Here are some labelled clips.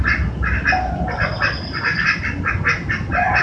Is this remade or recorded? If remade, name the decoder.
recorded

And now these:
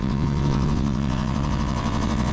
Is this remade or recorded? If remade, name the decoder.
remade, vocoder, WaveNeXt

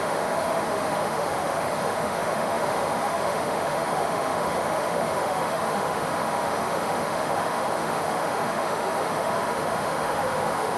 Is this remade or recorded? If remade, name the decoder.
remade, autoencoder, DAC-VAE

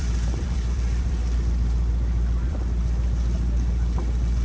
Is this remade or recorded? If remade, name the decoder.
remade, vocoder, BigVGAN v2